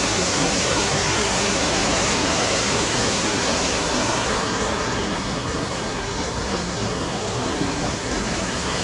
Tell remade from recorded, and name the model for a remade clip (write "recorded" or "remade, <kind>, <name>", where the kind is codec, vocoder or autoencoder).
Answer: remade, codec, SNAC